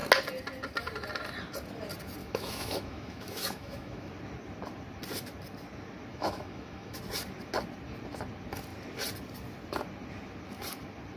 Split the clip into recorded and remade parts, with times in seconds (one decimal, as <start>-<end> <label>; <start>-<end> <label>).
0.0-2.2 recorded; 2.2-4.1 remade; 4.1-6.1 recorded; 6.1-7.0 remade; 7.0-11.2 recorded